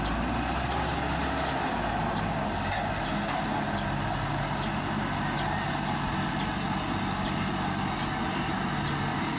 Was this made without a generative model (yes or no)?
yes